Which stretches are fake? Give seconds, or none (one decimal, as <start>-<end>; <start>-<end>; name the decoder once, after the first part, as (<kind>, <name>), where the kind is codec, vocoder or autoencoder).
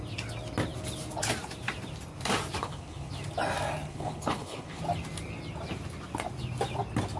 2.6-3.1 (codec, HILCodec); 3.9-4.8